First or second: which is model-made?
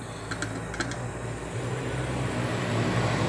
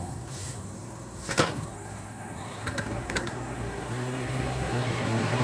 second